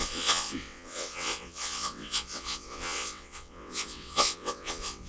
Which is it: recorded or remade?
remade